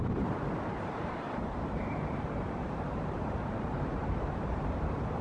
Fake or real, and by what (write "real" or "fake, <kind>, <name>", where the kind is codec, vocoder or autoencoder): fake, vocoder, BigVGAN v2